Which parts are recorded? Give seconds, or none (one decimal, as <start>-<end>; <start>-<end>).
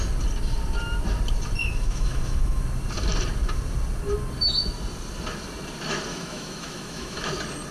0.0-1.6; 2.6-6.1; 7.3-7.7